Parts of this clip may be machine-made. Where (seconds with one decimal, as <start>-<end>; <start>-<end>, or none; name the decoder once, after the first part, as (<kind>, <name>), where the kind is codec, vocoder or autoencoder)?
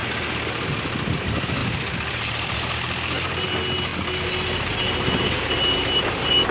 1.6-3.5 (vocoder, BigVGAN v2); 3.9-6.5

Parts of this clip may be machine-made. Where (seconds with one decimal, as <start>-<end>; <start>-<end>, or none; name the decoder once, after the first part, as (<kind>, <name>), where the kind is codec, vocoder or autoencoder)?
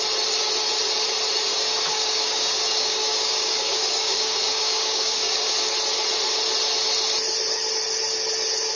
1.5-5.5 (codec, DAC)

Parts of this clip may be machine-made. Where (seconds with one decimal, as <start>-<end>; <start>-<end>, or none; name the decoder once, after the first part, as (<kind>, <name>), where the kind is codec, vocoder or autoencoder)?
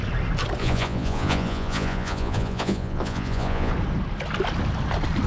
0.6-3.7 (vocoder, Vocos)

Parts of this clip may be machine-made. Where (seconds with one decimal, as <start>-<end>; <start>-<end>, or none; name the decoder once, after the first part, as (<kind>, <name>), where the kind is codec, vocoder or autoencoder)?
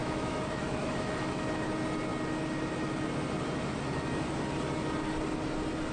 0.0-1.7 (autoencoder, DAC-VAE)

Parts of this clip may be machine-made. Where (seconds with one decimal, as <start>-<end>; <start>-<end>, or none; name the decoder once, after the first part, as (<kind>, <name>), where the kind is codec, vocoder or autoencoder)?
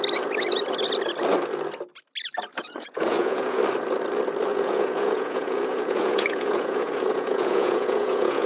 2.5-3.6 (vocoder, Vocos); 4.5-8.5